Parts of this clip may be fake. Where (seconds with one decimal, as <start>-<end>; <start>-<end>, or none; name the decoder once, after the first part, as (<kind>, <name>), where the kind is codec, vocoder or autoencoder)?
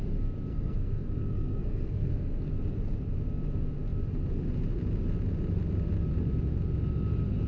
0.5-2.5 (codec, SNAC)